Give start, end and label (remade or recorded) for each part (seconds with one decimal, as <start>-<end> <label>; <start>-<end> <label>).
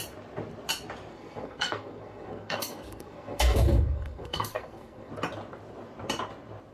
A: 0.0-1.1 recorded; 1.1-5.1 remade; 5.1-6.7 recorded